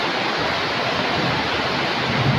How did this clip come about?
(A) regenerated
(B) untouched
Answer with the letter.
B